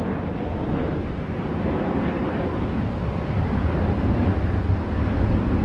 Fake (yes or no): no